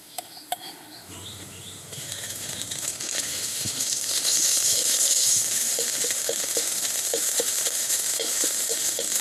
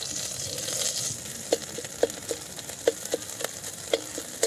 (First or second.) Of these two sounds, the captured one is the second